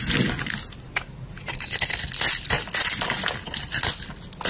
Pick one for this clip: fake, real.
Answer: real